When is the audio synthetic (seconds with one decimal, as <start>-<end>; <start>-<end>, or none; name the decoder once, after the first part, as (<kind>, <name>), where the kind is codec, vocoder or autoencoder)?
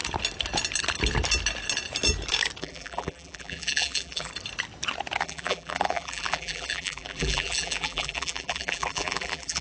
2.6-4.3 (vocoder, BigVGAN v2); 5.2-9.6